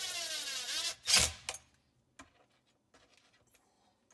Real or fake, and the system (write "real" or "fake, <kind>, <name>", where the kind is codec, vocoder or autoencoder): real